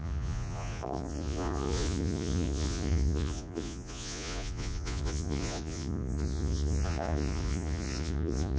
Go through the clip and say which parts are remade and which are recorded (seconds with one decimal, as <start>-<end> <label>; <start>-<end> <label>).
0.0-8.6 remade